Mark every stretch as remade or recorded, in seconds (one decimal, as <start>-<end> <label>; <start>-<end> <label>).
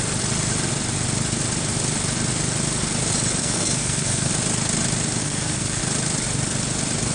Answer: 0.0-3.4 recorded; 3.4-4.3 remade; 4.3-5.2 recorded; 5.2-5.8 remade; 5.8-7.1 recorded